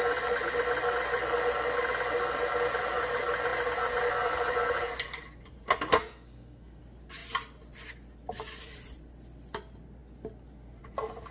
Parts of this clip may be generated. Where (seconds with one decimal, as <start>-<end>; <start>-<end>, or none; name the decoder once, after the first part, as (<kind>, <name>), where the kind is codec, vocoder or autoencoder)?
6.0-6.8 (codec, SNAC)